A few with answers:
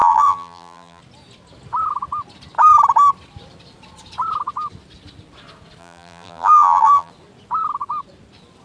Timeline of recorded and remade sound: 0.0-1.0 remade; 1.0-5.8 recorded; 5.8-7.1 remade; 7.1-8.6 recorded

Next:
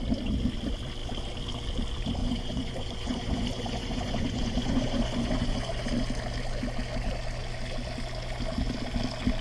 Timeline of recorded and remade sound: 0.0-2.2 recorded; 2.2-5.9 remade; 5.9-9.4 recorded

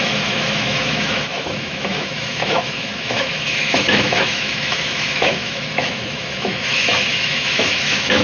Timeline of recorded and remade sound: 0.0-8.2 remade

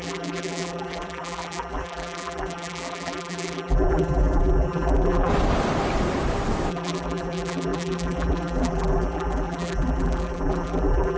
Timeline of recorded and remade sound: 0.0-5.3 remade; 5.3-6.7 recorded; 6.7-11.2 remade

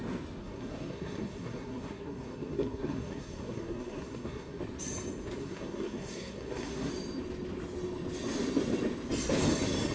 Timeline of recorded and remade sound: 0.0-0.4 recorded; 0.4-4.6 remade; 4.6-5.4 recorded; 5.4-6.9 remade; 6.9-9.9 recorded